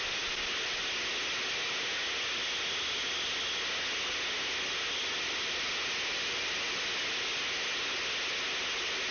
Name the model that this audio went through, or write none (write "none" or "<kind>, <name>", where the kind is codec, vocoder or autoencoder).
none